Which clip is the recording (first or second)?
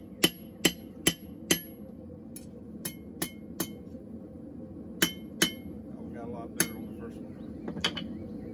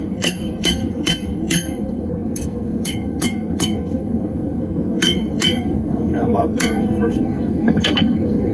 first